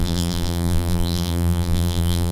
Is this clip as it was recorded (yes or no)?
no